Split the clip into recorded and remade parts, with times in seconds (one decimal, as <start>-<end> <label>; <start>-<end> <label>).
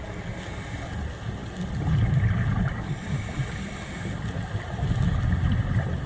0.0-6.1 recorded